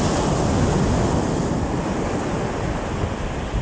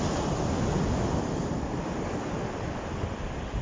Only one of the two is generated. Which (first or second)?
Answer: second